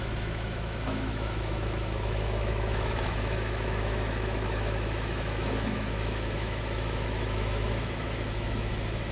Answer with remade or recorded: remade